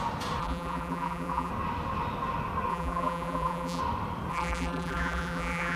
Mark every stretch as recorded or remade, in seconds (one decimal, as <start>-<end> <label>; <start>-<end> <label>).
0.0-0.4 recorded; 0.4-1.5 remade; 1.5-2.7 recorded; 2.7-3.8 remade; 3.8-4.3 recorded; 4.3-5.8 remade